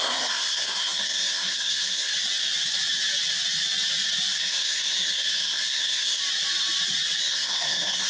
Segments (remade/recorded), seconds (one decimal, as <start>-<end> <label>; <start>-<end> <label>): 0.0-2.1 remade; 2.1-4.4 recorded; 4.4-6.2 remade; 6.2-7.2 recorded; 7.2-8.1 remade